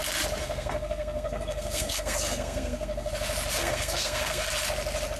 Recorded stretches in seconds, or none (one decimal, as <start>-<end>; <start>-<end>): 0.0-0.4; 3.1-3.6; 4.5-5.2